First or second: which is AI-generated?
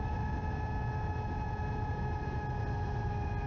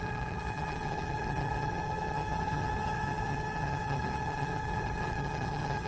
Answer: second